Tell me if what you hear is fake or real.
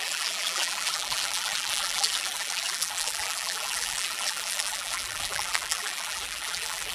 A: fake